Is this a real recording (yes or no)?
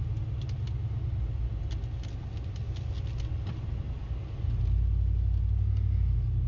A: yes